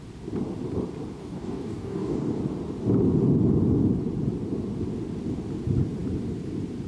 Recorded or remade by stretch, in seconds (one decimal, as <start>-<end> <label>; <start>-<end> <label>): 0.0-1.2 recorded; 1.2-2.4 remade; 2.4-6.9 recorded